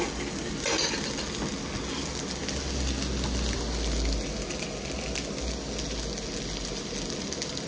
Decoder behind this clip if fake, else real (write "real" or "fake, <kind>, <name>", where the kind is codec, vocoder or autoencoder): real